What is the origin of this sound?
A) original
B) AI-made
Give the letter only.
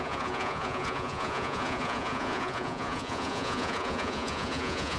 B